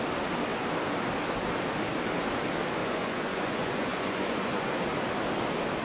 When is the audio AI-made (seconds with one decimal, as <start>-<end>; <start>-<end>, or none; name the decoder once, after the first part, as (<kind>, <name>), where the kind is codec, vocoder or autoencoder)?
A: 2.8-4.7 (vocoder, Vocos)